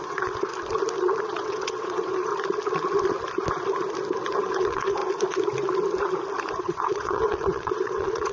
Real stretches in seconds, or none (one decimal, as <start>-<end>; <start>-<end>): 0.5-1.2; 2.3-4.4; 5.0-6.6